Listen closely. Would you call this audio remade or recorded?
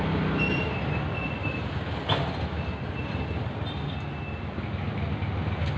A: recorded